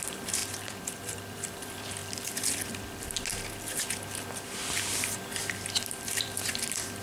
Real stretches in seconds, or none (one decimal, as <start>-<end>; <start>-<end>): 2.0-5.9